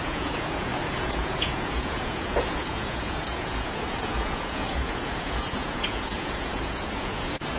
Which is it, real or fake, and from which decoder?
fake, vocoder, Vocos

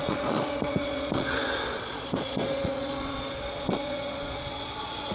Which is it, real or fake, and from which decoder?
fake, vocoder, Vocos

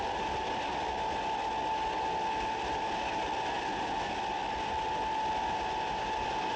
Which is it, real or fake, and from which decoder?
real